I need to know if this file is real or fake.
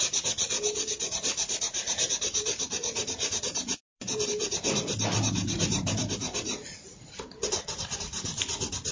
fake